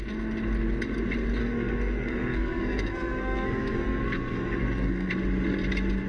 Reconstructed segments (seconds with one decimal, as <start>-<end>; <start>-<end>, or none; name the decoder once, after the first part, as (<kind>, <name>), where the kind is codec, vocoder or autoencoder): 1.4-5.1 (codec, SNAC)